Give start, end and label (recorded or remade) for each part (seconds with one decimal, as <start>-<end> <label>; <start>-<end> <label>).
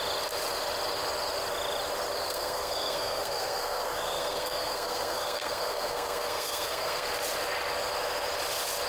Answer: 0.0-2.2 recorded; 2.2-7.1 remade; 7.1-8.9 recorded